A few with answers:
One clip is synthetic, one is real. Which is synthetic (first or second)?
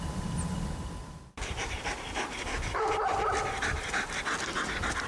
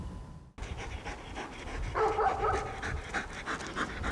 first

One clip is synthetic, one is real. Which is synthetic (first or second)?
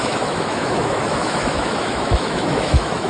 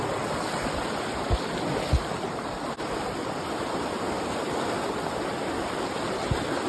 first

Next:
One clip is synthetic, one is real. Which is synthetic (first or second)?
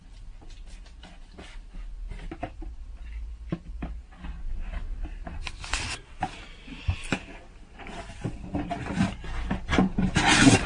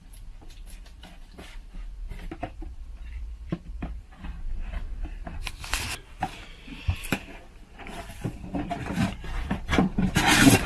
second